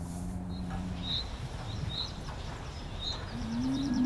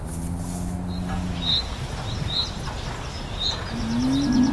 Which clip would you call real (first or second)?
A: second